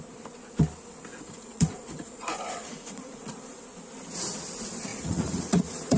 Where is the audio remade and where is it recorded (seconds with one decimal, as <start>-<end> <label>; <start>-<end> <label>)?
0.0-1.1 recorded; 1.1-3.6 remade; 3.6-4.9 recorded; 4.9-6.0 remade